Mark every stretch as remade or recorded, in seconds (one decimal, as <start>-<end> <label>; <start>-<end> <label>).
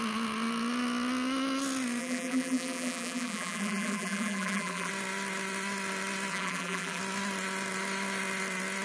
0.0-2.0 recorded; 2.0-4.9 remade; 4.9-6.3 recorded; 6.3-7.0 remade; 7.0-8.8 recorded